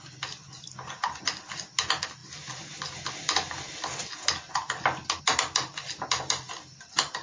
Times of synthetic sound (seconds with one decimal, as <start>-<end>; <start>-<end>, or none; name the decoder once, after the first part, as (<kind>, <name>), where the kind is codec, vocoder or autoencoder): none